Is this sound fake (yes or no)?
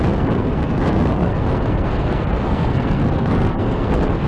yes